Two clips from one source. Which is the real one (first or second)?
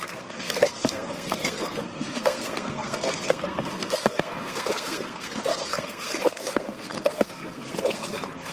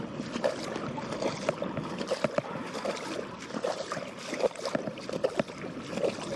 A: second